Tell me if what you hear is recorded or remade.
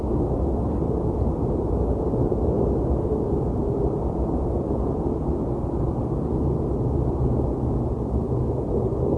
recorded